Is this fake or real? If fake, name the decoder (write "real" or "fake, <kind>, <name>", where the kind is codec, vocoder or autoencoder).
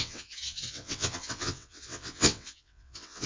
fake, vocoder, WaveNeXt